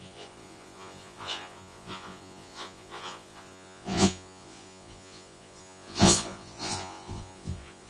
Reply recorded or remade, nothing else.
remade